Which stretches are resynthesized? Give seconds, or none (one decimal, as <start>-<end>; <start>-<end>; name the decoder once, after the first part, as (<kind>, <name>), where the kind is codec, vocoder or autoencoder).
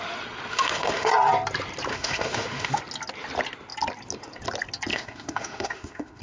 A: 0.5-1.1 (autoencoder, DAC-VAE); 1.9-2.8; 4.9-6.2